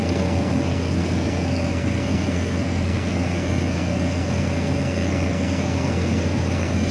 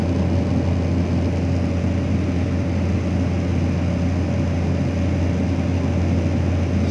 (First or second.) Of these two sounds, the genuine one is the second